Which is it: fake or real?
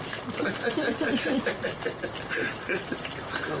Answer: real